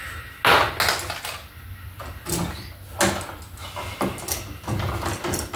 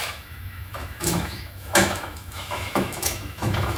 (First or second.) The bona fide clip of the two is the first